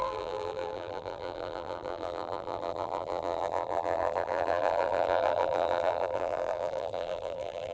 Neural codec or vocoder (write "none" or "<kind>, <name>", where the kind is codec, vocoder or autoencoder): vocoder, BigVGAN v2